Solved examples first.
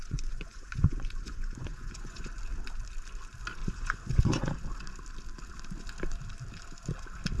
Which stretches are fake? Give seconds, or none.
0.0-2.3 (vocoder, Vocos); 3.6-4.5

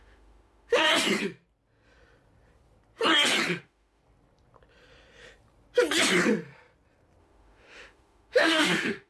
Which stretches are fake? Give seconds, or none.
0.0-0.9 (autoencoder, DAC-VAE); 3.6-4.0; 7.2-9.1

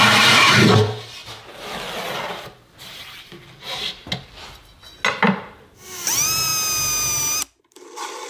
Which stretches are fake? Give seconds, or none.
0.0-1.2 (vocoder, BigVGAN v2); 2.1-4.0; 5.1-6.5; 7.6-8.3

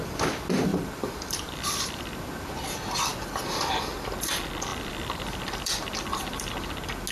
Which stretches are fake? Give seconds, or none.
0.7-2.1 (vocoder, BigVGAN v2); 4.7-6.5

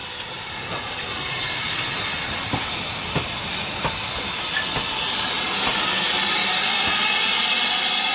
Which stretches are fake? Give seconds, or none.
none

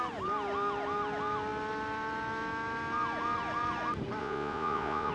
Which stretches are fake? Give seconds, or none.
4.2-5.1 (vocoder, Vocos)